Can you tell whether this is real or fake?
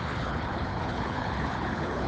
fake